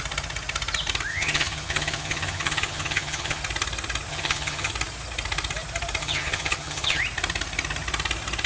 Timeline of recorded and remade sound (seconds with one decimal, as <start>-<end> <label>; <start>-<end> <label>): 0.0-1.1 recorded; 1.1-3.4 remade; 3.4-4.1 recorded; 4.1-4.7 remade; 4.7-6.0 recorded; 6.0-7.0 remade; 7.0-8.5 recorded